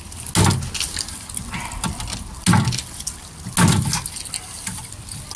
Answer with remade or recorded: recorded